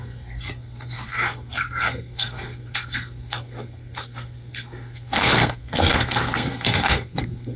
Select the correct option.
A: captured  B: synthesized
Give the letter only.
B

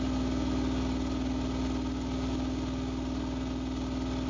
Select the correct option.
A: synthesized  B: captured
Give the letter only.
B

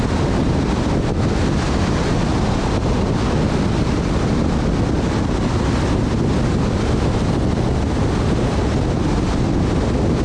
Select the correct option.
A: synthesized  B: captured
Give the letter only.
B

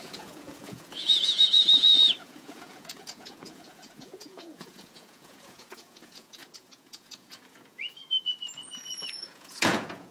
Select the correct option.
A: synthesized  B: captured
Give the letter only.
A